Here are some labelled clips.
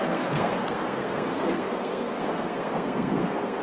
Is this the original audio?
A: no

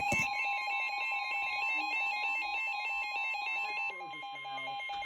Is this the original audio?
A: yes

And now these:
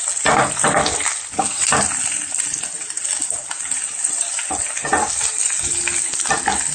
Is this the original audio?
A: yes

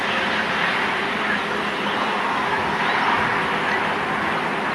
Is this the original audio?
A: yes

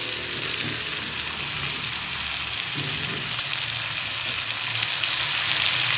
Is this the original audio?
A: yes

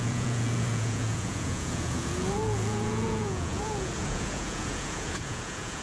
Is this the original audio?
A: no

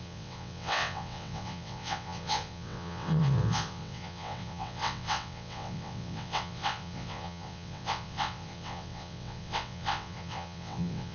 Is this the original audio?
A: no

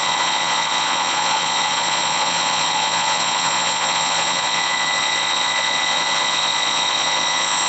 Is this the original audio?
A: no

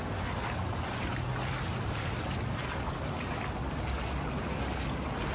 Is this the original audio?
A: yes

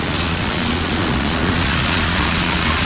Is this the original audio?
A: no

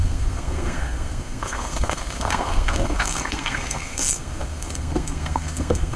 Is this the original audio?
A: no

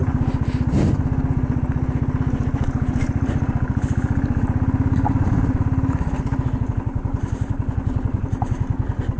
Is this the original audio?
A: yes